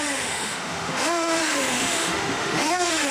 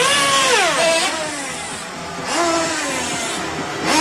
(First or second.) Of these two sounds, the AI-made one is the first